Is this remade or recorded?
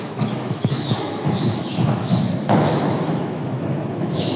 remade